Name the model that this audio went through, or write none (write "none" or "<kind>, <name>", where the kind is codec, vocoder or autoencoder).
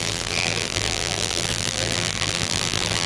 vocoder, BigVGAN v2